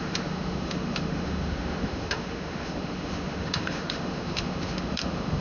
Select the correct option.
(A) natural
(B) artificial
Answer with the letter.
B